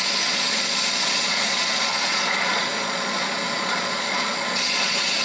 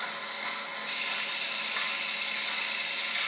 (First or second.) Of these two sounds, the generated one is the first